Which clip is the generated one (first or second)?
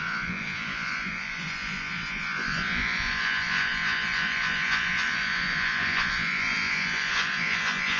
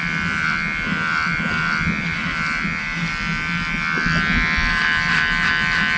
first